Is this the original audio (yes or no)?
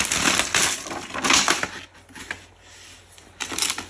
yes